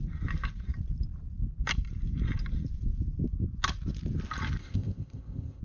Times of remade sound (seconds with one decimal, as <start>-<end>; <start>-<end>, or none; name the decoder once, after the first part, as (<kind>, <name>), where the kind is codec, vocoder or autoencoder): 4.6-5.6 (codec, ZipCodec)